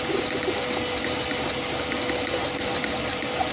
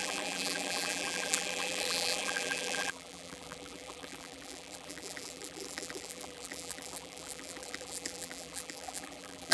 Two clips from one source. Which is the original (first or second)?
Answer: first